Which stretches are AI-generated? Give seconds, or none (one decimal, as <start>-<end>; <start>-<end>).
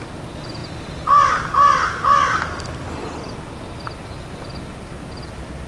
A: none